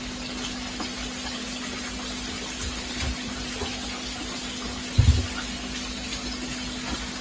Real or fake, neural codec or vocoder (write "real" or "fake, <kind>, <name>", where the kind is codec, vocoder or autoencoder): real